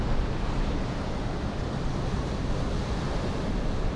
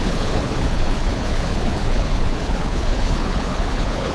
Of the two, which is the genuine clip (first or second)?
first